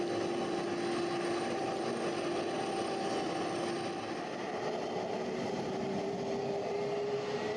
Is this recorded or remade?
recorded